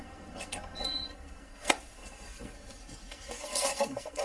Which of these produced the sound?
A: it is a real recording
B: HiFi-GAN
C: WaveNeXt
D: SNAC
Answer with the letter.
D